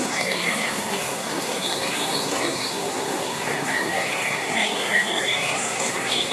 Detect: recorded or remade remade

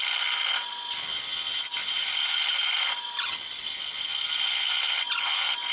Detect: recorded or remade recorded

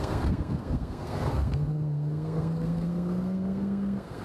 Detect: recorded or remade remade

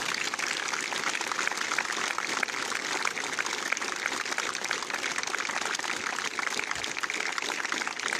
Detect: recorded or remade recorded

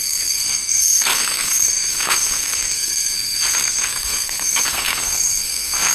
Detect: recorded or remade remade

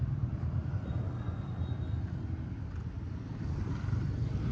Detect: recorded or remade recorded